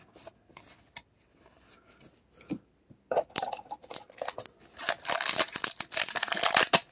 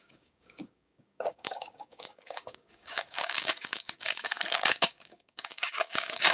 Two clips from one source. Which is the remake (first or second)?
second